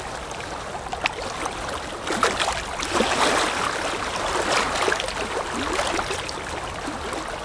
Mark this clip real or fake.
real